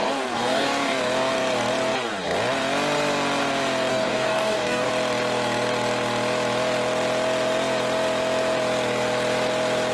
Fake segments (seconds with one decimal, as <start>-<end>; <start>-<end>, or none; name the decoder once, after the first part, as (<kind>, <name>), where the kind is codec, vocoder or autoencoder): 0.0-1.0 (codec, DAC); 3.9-4.9